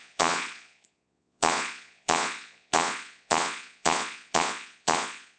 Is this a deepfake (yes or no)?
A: yes